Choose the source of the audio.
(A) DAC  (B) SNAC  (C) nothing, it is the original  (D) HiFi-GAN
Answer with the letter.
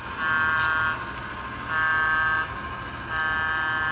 C